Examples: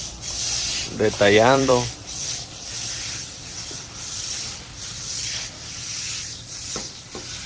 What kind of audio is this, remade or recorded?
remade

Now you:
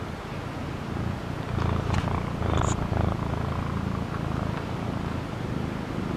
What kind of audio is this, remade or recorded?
recorded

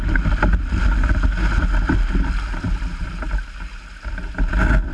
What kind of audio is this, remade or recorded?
recorded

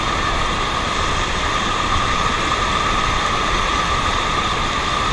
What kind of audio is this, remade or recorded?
remade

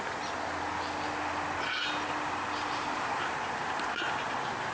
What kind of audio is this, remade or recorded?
recorded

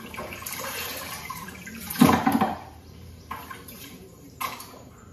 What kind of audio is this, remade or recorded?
remade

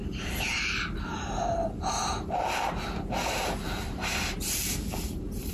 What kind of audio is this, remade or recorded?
remade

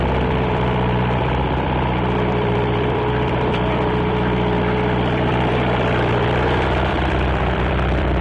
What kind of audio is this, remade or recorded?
remade